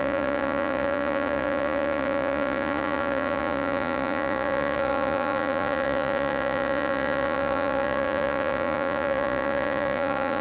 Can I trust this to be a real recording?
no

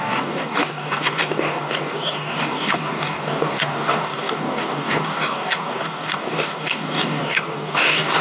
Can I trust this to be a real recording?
no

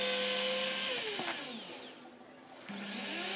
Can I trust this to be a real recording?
yes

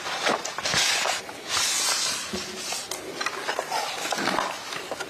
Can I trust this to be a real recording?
yes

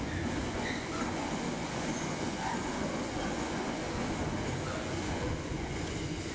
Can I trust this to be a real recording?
no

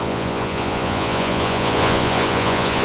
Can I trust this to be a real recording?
no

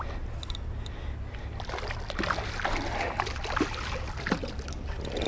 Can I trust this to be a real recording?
yes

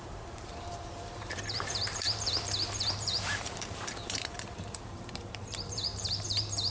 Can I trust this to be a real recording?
no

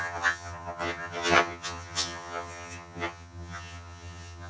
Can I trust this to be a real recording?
no